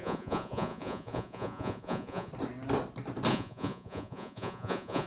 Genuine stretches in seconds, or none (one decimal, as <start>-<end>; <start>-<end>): 2.3-3.3